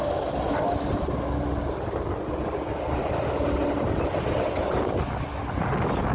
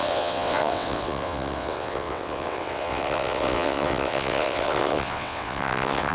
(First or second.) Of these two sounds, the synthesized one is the second